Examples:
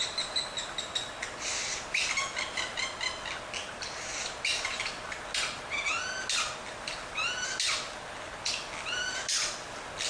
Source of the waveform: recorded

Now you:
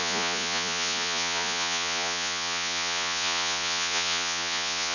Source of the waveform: remade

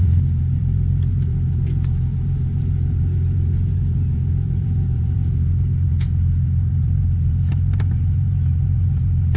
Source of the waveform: remade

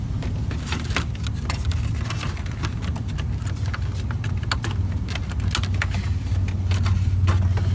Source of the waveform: recorded